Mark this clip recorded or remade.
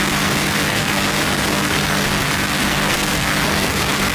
remade